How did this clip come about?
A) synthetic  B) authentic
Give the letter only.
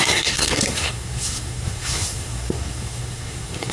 A